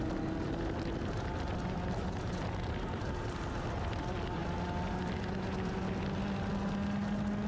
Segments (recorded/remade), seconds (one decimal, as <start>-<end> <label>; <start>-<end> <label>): 0.0-7.5 recorded